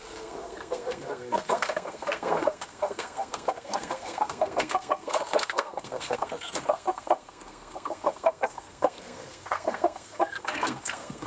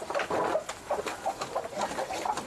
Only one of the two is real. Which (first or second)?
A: second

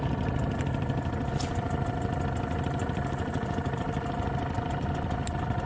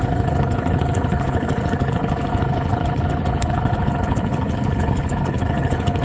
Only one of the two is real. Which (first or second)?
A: first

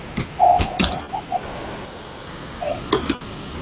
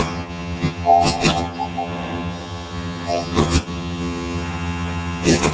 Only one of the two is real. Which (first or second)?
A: first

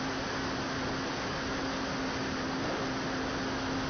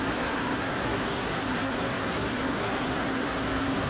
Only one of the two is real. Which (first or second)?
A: first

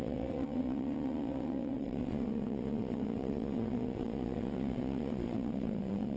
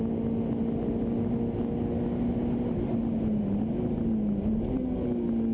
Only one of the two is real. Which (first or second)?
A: second